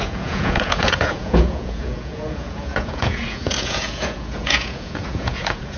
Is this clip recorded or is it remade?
remade